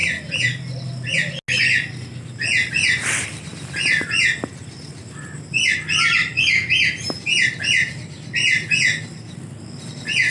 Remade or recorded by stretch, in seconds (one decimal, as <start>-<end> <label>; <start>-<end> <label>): 0.0-10.3 recorded